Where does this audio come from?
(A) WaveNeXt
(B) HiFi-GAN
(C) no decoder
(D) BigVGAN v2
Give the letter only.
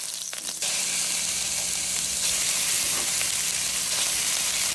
D